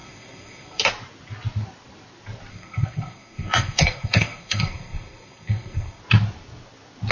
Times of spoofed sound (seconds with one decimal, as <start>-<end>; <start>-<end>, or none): 0.0-0.8; 2.5-6.0